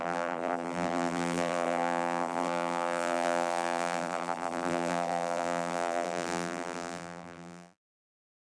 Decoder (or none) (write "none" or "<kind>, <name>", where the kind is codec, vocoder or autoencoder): vocoder, BigVGAN v2